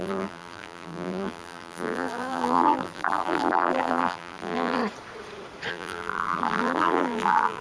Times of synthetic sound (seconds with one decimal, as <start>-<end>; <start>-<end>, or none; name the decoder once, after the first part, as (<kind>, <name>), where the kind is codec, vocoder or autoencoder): 0.0-4.8 (vocoder, BigVGAN v2); 5.7-7.6